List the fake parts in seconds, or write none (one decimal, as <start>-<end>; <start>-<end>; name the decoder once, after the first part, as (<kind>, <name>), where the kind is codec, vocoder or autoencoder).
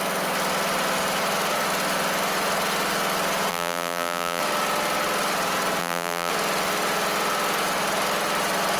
3.5-4.4 (vocoder, BigVGAN v2); 5.8-6.3